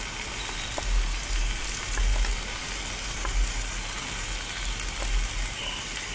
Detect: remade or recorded recorded